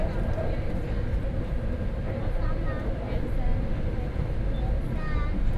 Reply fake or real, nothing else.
real